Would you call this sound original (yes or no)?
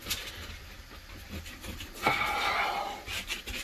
yes